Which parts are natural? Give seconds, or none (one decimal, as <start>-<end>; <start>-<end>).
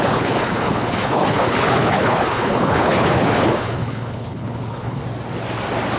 5.0-6.0